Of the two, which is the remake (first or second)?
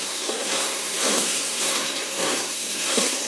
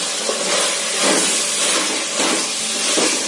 first